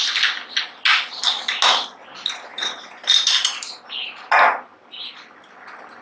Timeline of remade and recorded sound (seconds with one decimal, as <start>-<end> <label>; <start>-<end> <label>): 0.0-6.0 recorded